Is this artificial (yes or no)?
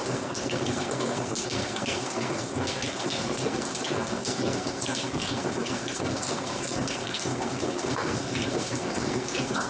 yes